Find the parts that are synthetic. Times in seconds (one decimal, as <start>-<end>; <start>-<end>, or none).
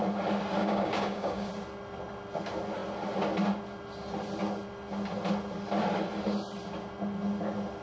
0.6-1.5